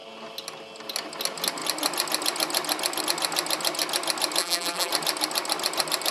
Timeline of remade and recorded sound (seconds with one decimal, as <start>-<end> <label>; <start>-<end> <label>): 0.0-4.4 recorded; 4.4-4.9 remade; 4.9-6.1 recorded